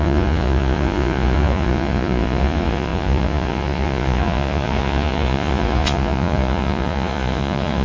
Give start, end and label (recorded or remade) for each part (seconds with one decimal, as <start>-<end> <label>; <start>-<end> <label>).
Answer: 0.0-7.8 remade

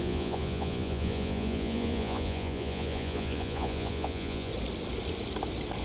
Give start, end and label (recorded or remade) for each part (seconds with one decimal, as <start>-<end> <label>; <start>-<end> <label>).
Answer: 0.0-4.5 remade; 4.5-5.8 recorded

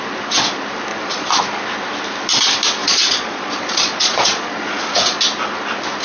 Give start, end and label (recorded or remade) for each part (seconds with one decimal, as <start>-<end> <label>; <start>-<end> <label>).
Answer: 0.0-0.9 recorded; 0.9-1.4 remade; 1.4-2.8 recorded; 2.8-5.2 remade; 5.2-6.0 recorded